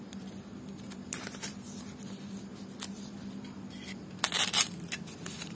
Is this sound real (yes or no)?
yes